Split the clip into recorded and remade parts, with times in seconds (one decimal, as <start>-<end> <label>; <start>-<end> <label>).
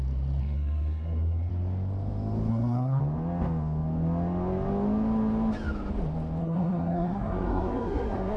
0.0-0.4 recorded; 0.4-1.5 remade; 1.5-2.5 recorded; 2.5-3.0 remade; 3.0-6.4 recorded; 6.4-8.4 remade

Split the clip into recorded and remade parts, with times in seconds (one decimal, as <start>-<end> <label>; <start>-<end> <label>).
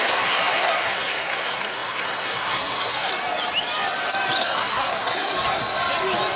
0.0-3.1 remade; 3.1-4.4 recorded; 4.4-5.3 remade; 5.3-6.4 recorded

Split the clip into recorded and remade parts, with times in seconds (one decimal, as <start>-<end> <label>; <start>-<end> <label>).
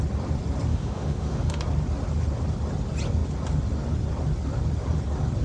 0.0-0.7 recorded; 0.7-1.6 remade; 1.6-5.4 recorded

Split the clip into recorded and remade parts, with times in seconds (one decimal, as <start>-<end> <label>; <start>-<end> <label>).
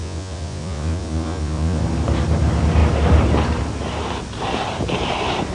0.0-1.8 remade; 1.8-5.5 recorded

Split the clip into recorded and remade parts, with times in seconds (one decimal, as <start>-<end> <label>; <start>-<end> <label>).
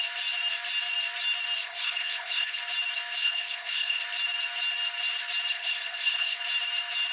0.0-1.6 recorded; 1.6-2.6 remade; 2.6-3.2 recorded; 3.2-4.0 remade; 4.0-5.5 recorded; 5.5-6.4 remade; 6.4-7.1 recorded